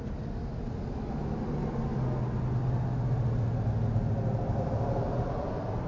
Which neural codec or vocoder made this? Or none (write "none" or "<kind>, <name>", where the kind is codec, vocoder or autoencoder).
none